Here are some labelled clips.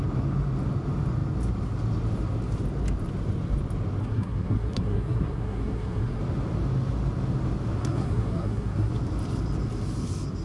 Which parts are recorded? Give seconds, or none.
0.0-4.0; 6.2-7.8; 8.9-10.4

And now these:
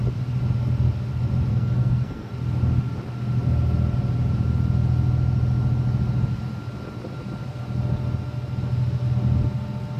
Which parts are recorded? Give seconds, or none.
0.0-1.5; 2.3-10.0

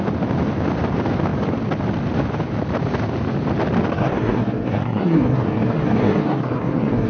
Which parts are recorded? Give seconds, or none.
0.0-3.9

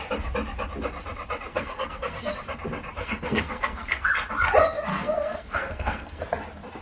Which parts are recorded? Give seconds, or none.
0.0-1.5; 2.3-3.0; 4.1-4.9; 6.2-6.8

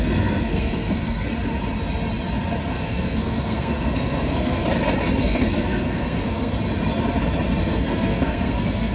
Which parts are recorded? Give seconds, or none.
1.3-2.7; 4.6-5.2; 6.5-7.6

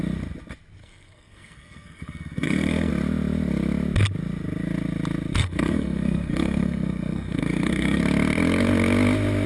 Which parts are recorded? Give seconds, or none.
0.0-0.8; 2.9-5.3; 8.0-9.5

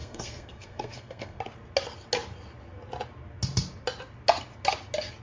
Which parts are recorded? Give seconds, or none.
1.4-5.2

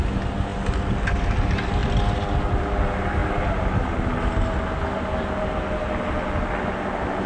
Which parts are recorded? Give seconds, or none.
0.0-7.3